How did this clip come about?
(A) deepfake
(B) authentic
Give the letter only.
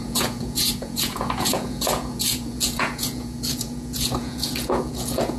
A